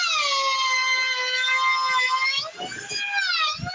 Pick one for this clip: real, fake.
real